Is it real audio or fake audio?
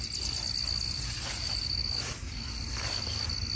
real